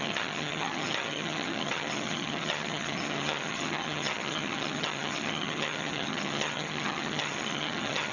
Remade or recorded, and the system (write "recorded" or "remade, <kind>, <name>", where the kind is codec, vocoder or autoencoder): remade, vocoder, HiFi-GAN